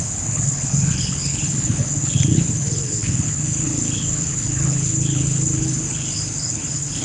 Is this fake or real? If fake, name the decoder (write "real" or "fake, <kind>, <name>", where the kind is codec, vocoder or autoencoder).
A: fake, codec, HILCodec